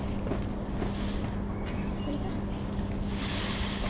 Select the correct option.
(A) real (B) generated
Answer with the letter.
A